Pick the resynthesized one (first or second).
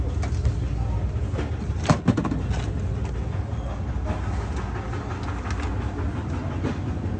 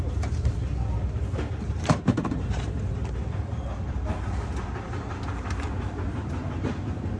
second